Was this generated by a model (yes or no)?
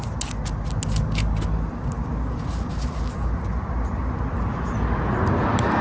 no